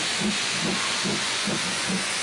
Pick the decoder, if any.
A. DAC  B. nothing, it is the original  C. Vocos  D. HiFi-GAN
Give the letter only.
C